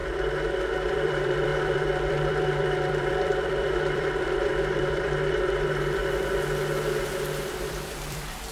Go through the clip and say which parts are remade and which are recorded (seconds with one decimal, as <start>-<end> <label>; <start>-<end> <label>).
0.0-0.9 recorded; 0.9-6.0 remade; 6.0-7.7 recorded; 7.7-8.5 remade